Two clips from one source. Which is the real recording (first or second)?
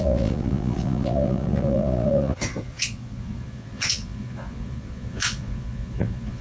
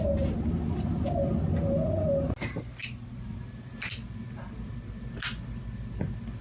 second